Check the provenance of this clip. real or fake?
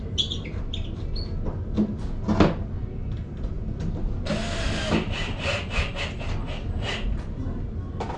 real